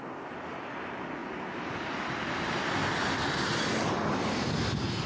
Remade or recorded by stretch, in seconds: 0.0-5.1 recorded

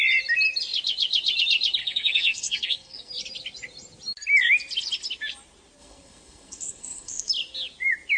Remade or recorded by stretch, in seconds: 0.0-1.8 recorded; 1.8-3.1 remade; 3.1-5.8 recorded; 5.8-7.3 remade; 7.3-8.2 recorded